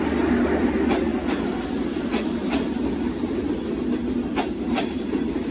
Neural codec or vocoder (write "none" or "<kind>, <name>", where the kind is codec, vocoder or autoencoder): none